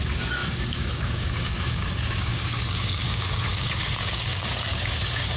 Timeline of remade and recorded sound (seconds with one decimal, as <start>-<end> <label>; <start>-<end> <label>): 0.0-5.4 remade